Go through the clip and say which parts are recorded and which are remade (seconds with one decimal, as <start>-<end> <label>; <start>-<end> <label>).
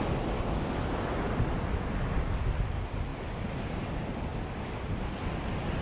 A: 0.0-5.8 recorded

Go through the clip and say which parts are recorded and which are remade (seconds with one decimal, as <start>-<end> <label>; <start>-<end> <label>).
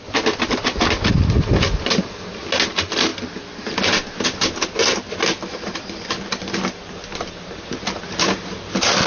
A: 0.0-9.1 recorded